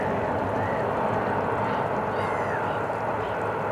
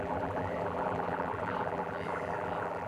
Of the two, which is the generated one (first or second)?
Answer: second